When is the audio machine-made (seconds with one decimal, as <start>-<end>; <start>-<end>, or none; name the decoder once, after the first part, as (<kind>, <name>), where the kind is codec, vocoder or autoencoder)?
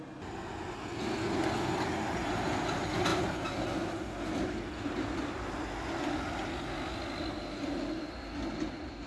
none